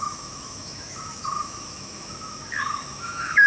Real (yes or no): no